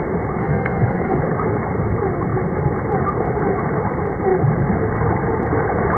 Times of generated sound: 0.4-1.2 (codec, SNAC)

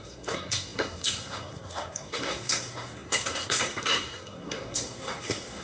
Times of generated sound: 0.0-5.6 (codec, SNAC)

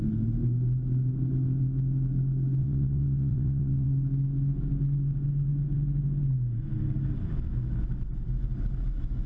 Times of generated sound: 2.6-3.9 (vocoder, WaveNeXt)